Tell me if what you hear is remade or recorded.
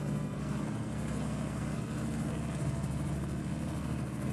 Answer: remade